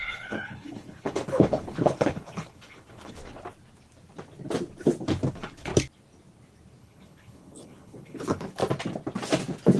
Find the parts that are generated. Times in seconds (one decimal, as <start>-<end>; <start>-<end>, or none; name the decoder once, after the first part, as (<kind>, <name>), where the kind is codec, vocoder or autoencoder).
0.0-3.2 (codec, HILCodec); 5.3-5.7; 6.8-8.6